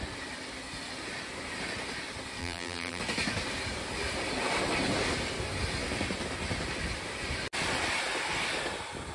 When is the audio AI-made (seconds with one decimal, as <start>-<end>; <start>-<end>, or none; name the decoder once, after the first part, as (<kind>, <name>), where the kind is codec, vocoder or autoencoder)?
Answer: 2.4-3.0 (vocoder, BigVGAN v2)